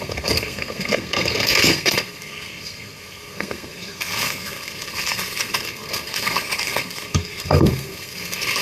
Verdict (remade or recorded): remade